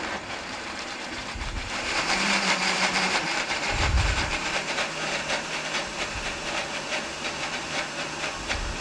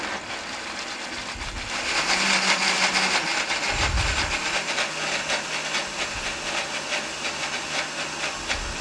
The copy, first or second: first